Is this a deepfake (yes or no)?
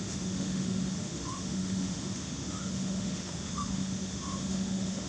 yes